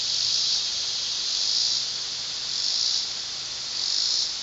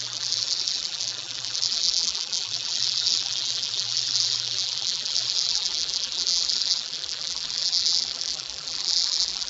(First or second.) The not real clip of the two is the second